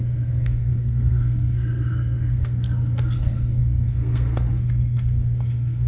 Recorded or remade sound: remade